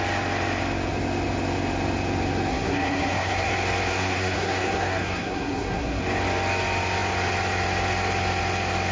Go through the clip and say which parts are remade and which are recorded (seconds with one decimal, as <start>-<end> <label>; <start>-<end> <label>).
0.0-2.5 recorded; 2.5-3.5 remade; 3.5-3.9 recorded; 3.9-6.0 remade; 6.0-8.9 recorded